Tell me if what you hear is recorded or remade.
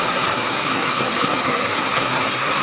remade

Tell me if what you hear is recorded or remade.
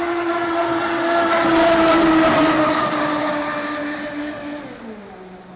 recorded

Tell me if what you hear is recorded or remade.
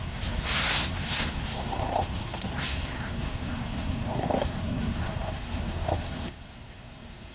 remade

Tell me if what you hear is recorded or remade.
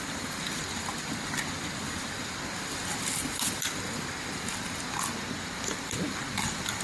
recorded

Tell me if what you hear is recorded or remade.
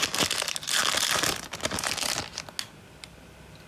recorded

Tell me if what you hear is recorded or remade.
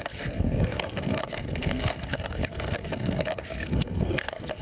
remade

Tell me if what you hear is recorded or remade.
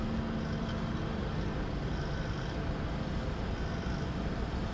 recorded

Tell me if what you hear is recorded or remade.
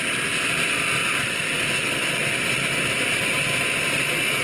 recorded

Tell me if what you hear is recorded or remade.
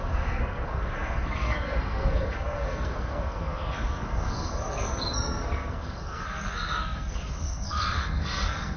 remade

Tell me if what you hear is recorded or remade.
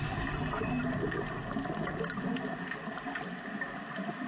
recorded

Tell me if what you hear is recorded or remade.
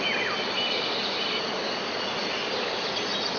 recorded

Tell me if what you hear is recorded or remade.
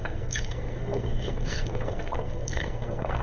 remade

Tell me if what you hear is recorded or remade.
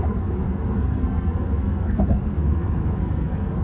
remade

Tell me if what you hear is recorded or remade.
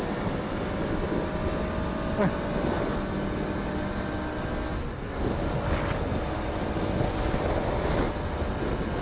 recorded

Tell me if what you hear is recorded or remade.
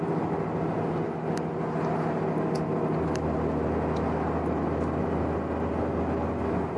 recorded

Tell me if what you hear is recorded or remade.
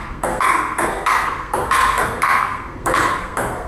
remade